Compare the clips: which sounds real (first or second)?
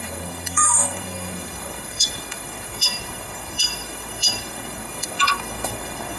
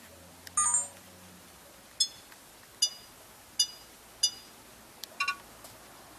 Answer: second